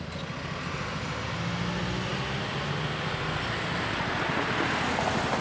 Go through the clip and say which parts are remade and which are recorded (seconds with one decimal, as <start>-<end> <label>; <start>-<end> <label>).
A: 0.0-5.4 recorded